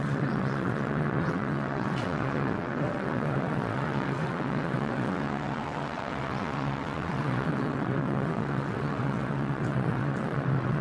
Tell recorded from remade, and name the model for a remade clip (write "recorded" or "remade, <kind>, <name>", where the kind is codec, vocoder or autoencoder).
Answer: remade, vocoder, WaveNeXt